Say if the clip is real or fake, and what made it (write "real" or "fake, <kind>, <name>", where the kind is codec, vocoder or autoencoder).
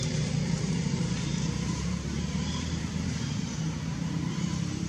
fake, vocoder, BigVGAN v2